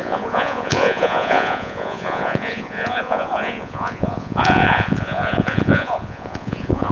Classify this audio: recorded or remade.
remade